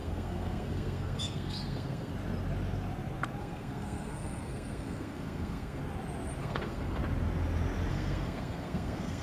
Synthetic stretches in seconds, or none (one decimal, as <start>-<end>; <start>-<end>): 0.0-2.1; 3.4-5.8; 6.4-7.0; 7.9-9.2